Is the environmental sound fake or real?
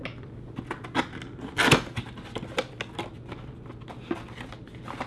real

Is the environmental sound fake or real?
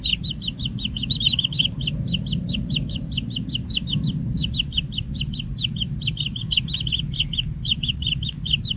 real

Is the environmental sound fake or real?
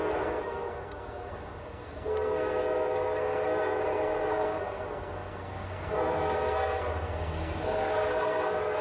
fake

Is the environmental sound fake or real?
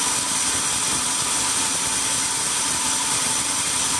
real